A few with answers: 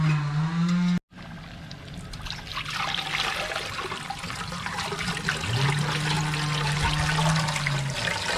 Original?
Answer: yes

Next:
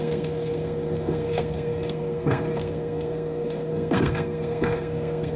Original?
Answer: no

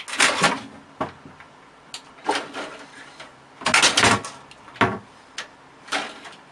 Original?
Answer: yes